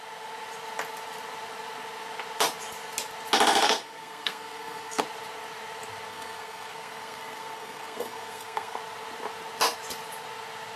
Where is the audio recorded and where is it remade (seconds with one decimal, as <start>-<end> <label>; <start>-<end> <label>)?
0.0-3.5 recorded; 3.5-5.0 remade; 5.0-6.1 recorded; 6.1-8.8 remade; 8.8-10.8 recorded